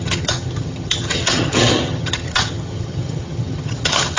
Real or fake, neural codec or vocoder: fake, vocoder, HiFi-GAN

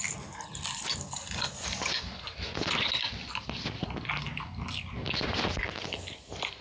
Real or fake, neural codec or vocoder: real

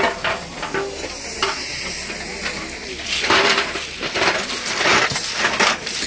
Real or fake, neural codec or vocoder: real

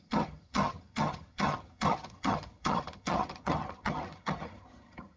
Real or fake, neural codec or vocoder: fake, vocoder, HiFi-GAN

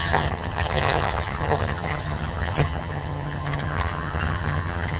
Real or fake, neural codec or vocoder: fake, vocoder, HiFi-GAN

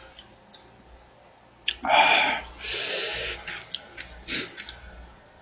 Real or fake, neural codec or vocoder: real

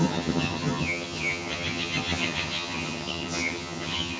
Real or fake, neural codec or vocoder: fake, vocoder, HiFi-GAN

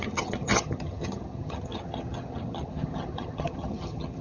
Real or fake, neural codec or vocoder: fake, vocoder, HiFi-GAN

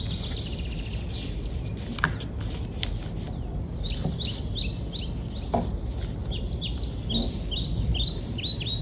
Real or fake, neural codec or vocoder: real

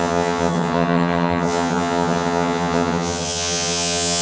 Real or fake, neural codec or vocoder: fake, vocoder, HiFi-GAN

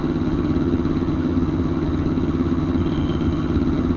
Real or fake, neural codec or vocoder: fake, vocoder, HiFi-GAN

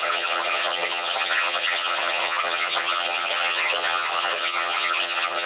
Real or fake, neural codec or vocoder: fake, vocoder, HiFi-GAN